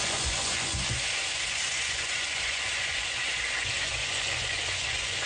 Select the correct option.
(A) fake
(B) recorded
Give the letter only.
A